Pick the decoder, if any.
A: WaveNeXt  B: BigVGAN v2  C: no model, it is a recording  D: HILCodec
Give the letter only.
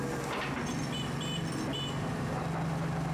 C